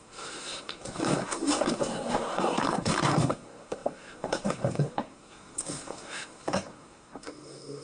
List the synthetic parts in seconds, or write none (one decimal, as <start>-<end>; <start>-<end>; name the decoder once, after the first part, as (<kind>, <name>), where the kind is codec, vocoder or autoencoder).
0.0-7.8 (codec, SNAC)